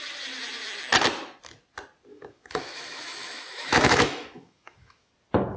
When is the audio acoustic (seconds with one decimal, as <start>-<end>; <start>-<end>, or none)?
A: 0.0-2.1; 5.1-5.6